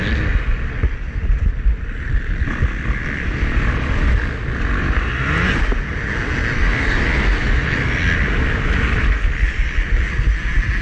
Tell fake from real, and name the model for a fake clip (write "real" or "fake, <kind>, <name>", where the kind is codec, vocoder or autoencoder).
real